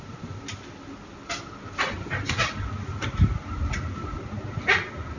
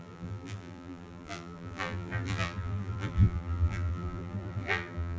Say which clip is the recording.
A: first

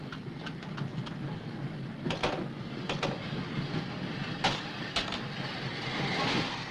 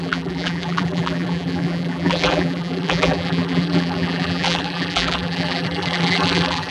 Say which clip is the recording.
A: first